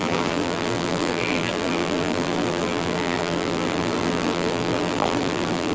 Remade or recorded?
remade